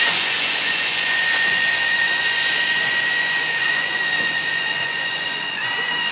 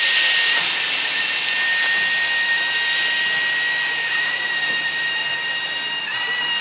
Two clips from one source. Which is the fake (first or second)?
first